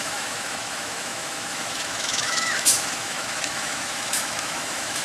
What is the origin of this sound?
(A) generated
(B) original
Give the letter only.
A